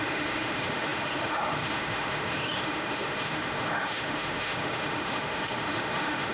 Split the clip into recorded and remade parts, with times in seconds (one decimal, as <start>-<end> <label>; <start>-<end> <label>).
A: 0.0-6.3 remade